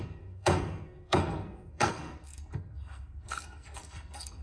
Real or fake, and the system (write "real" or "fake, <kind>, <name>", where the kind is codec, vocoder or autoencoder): fake, codec, SNAC